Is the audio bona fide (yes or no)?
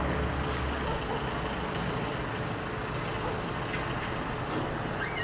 yes